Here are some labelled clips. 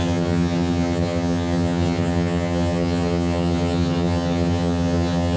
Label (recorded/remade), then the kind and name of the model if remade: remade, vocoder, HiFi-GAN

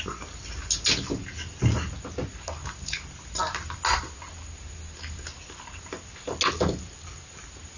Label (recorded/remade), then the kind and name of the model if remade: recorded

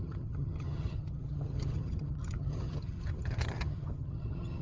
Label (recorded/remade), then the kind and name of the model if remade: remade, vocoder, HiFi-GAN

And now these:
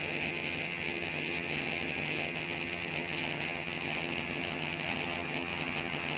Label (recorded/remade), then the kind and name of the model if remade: remade, vocoder, HiFi-GAN